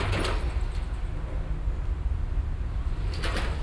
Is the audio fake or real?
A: real